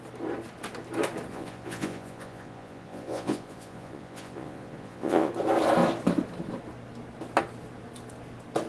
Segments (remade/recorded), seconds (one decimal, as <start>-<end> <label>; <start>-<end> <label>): 0.0-1.3 recorded; 1.3-5.3 remade; 5.3-8.7 recorded